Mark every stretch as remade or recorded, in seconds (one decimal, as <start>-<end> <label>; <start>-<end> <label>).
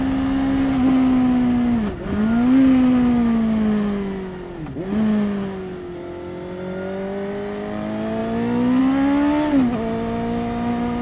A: 0.0-11.0 recorded